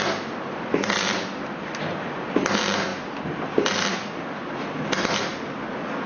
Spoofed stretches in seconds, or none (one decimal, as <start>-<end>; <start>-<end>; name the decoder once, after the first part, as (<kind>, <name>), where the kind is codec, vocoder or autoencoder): 0.0-2.9 (vocoder, BigVGAN v2); 3.5-5.3